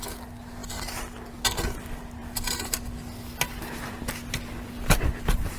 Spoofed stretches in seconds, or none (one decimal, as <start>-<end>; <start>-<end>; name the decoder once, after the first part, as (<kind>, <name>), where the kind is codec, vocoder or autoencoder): none